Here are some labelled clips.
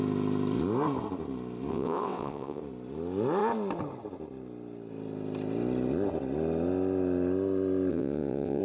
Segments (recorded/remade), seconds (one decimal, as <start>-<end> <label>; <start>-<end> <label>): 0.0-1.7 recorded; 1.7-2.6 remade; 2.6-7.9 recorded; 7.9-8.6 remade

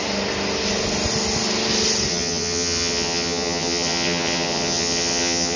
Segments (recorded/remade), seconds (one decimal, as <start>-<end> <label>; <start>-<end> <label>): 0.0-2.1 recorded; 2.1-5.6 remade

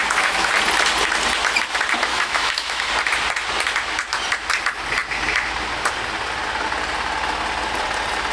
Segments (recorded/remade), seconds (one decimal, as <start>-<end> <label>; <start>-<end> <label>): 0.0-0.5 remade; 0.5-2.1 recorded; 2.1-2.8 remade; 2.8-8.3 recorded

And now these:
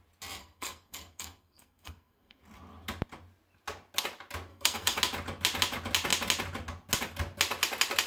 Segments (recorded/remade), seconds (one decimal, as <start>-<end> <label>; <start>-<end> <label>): 0.0-0.4 recorded; 0.4-2.4 remade; 2.4-4.5 recorded; 4.5-5.0 remade; 5.0-8.1 recorded